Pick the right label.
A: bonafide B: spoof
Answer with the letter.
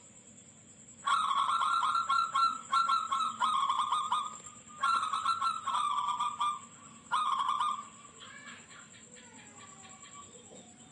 A